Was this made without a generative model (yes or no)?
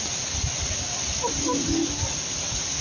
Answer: yes